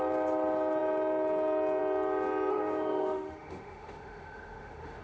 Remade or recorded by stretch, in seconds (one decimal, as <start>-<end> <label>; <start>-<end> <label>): 0.0-2.5 recorded; 2.5-5.0 remade